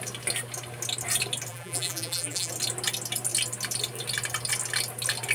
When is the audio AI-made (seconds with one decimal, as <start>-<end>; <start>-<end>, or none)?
1.5-2.5